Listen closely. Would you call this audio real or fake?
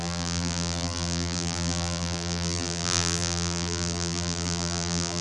fake